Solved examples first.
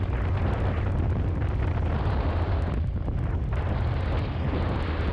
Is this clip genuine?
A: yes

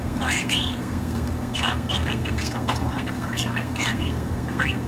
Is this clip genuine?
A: no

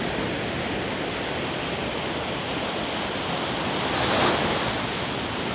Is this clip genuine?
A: yes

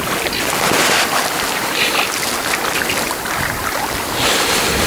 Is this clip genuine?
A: yes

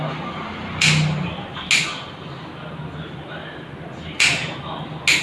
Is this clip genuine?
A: yes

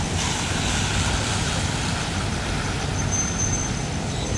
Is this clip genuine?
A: yes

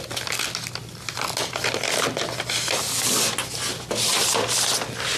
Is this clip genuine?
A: yes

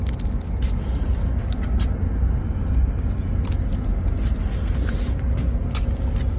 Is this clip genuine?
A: yes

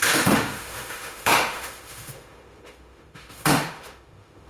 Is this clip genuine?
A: no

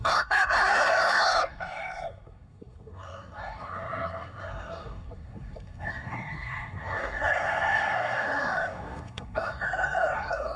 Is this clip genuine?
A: no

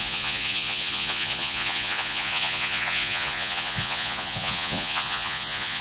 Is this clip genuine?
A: no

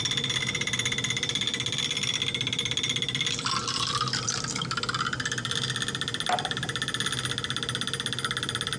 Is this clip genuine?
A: yes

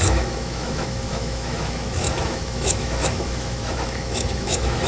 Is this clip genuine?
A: no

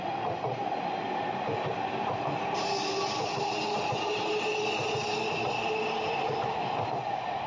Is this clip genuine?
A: yes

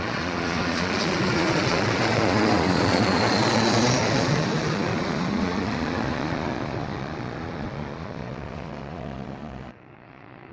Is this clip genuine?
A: no